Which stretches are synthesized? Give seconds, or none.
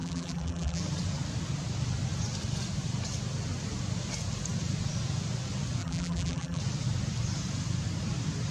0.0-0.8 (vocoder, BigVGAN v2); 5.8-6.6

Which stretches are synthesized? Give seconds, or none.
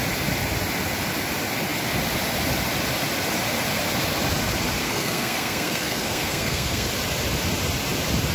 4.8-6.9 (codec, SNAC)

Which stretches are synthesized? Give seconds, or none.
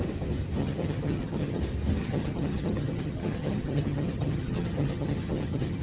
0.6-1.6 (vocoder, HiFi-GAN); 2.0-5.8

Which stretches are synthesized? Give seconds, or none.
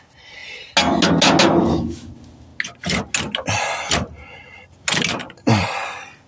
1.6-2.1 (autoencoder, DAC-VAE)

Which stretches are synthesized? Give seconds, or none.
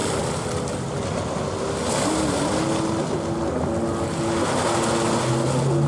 0.0-1.0 (vocoder, BigVGAN v2)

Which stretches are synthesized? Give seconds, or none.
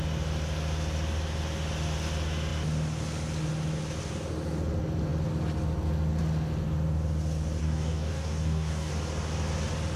7.6-8.9 (codec, DAC)